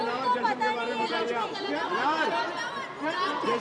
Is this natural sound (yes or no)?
yes